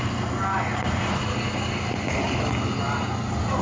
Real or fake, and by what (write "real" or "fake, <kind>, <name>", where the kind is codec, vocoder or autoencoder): real